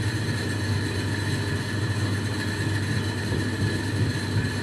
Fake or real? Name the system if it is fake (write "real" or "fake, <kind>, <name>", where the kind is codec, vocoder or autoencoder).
real